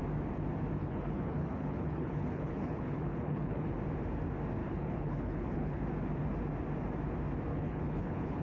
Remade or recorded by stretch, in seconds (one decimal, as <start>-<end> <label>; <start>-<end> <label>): 0.0-0.8 recorded; 0.8-3.7 remade; 3.7-4.6 recorded; 4.6-5.8 remade; 5.8-7.5 recorded; 7.5-8.4 remade